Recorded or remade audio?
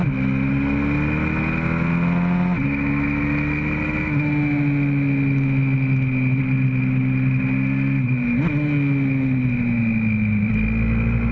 recorded